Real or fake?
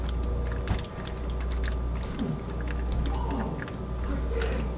real